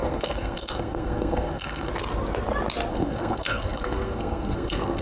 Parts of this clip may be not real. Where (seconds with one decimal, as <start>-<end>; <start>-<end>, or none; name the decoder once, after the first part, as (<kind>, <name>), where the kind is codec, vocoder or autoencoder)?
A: 0.0-1.9 (codec, SNAC); 2.9-5.0